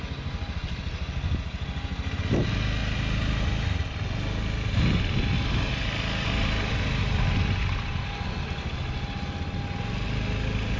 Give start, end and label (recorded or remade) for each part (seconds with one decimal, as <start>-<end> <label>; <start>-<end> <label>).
0.0-10.8 recorded